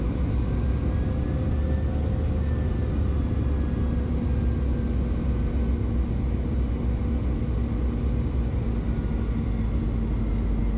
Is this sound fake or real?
real